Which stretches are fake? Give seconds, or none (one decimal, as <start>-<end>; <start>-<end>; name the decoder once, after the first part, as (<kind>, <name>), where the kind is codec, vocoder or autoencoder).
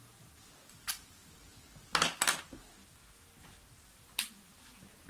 none